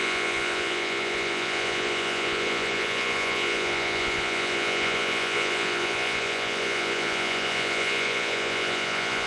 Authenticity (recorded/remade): remade